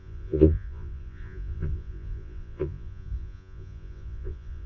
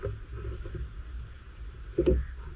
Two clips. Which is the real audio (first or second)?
second